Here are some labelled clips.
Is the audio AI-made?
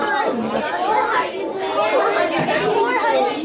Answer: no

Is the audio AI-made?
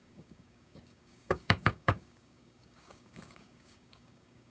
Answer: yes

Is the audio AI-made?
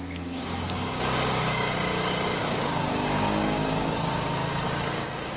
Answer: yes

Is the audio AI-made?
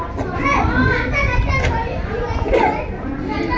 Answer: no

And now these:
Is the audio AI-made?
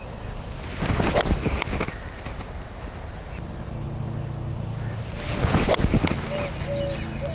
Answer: no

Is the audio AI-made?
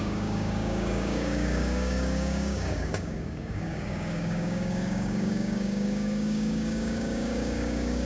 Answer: yes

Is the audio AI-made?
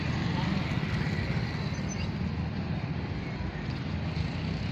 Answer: no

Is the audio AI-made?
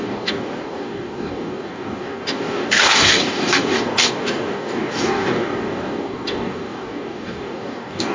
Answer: yes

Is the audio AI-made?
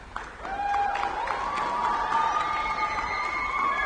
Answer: no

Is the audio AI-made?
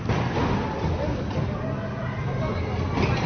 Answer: no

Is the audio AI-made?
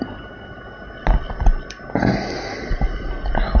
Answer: no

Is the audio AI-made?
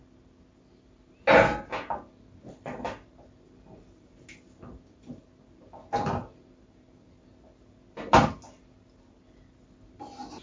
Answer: no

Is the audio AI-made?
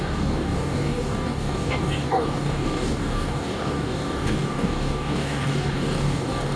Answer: yes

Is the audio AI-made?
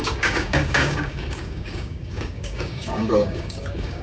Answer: yes